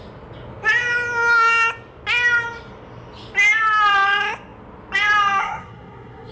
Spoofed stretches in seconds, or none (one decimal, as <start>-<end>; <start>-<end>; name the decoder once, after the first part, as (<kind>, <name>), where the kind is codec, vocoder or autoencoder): 5.4-6.3 (codec, SNAC)